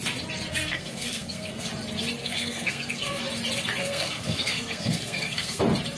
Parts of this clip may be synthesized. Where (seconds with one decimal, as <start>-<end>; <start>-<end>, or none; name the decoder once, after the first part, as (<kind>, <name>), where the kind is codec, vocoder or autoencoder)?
0.5-1.7 (codec, SNAC); 2.2-3.2; 3.8-5.6

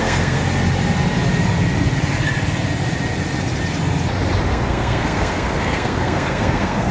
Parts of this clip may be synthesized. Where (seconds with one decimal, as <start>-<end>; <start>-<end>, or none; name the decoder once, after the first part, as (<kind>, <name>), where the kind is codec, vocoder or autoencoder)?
0.0-0.4 (codec, SNAC); 4.5-6.9

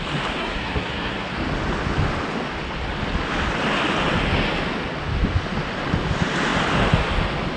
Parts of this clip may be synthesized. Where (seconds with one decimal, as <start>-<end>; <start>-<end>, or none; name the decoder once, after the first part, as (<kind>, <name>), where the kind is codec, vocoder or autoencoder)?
0.4-1.3 (codec, SNAC)

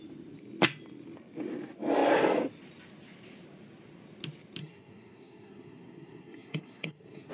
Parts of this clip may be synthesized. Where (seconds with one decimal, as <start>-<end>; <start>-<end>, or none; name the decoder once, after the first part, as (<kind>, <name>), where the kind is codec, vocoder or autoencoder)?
4.6-7.3 (codec, SNAC)

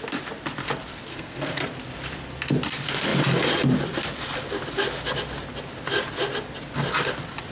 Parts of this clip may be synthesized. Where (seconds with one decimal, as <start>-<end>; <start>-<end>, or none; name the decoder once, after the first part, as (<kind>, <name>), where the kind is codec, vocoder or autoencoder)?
1.1-1.6 (codec, SNAC)

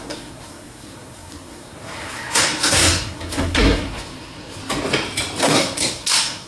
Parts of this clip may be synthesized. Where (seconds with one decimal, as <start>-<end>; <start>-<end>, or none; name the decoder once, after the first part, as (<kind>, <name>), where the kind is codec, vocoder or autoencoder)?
0.0-4.6 (codec, SNAC); 5.4-6.5